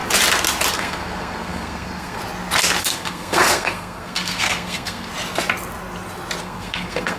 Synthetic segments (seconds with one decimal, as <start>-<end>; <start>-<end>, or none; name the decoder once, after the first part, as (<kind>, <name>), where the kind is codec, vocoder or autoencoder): 0.7-2.2 (codec, SNAC); 2.8-5.1; 6.4-7.2

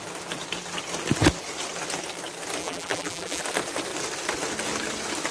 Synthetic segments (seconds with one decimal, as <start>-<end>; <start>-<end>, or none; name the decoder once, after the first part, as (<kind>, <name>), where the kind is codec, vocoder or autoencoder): 2.6-3.4 (vocoder, BigVGAN v2)

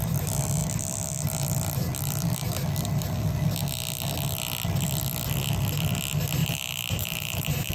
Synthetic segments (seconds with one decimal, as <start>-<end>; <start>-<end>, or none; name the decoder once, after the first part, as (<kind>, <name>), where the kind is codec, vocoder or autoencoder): 6.4-7.7 (vocoder, BigVGAN v2)